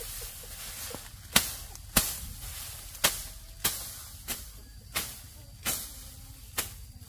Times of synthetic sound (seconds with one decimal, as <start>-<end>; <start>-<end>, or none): 4.3-5.0